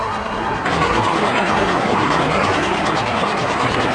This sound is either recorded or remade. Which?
remade